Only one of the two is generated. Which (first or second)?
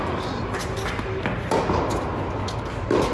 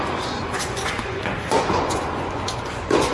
second